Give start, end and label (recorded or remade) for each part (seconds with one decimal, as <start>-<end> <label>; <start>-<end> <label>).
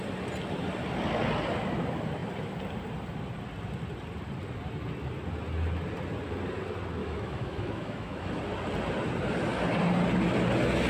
0.0-7.0 recorded; 7.0-8.4 remade; 8.4-10.9 recorded